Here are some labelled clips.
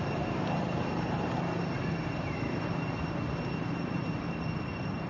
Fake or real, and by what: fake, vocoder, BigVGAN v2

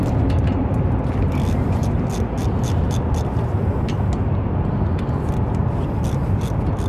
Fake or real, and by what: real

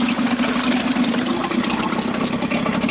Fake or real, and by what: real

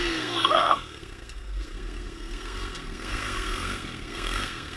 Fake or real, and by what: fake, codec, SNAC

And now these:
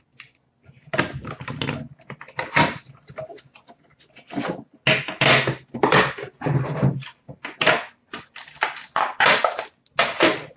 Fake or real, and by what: real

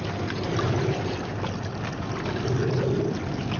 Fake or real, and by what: fake, vocoder, BigVGAN v2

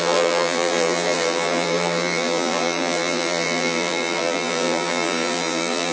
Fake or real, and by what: fake, vocoder, BigVGAN v2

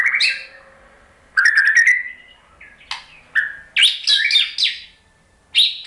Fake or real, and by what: real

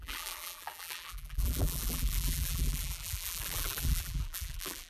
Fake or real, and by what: fake, vocoder, BigVGAN v2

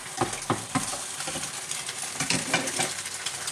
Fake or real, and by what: real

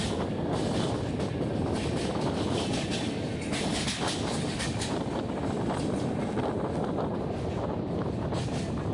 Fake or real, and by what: real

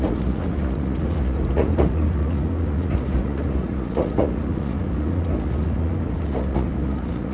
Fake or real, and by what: fake, vocoder, Vocos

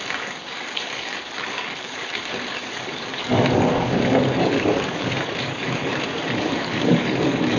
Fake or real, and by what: fake, codec, DAC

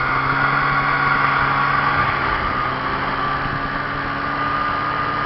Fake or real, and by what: real